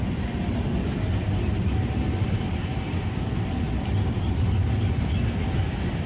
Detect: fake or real real